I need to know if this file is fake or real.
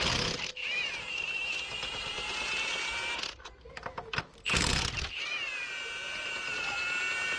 real